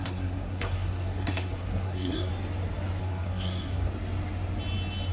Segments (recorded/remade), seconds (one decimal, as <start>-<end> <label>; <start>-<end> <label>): 0.0-2.3 remade; 2.3-3.0 recorded; 3.0-3.9 remade; 3.9-5.1 recorded